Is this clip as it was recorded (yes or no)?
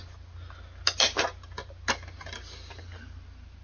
yes